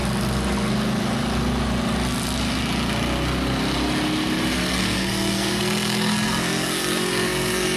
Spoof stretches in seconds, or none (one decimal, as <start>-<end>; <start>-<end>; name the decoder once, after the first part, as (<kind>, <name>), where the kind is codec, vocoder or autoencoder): 4.7-7.8 (codec, SNAC)